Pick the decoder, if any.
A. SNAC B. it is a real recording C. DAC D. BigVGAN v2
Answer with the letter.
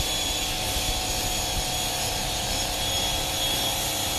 D